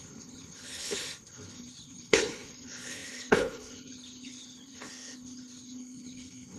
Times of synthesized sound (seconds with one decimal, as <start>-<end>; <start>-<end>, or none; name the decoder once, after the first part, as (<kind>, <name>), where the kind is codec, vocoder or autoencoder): 0.0-6.6 (codec, HILCodec)